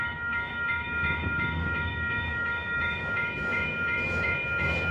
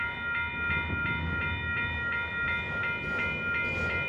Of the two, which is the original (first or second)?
second